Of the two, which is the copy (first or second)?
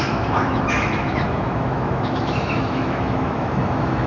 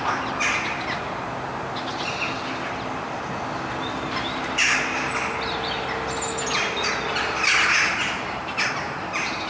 first